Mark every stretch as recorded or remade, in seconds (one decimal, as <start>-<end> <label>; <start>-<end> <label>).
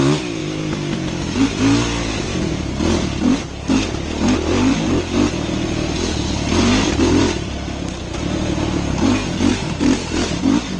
0.0-9.5 recorded; 9.5-10.4 remade; 10.4-10.8 recorded